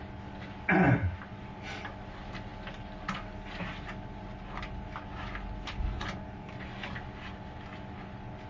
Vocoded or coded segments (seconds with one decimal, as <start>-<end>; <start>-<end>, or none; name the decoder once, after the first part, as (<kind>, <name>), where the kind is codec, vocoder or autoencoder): none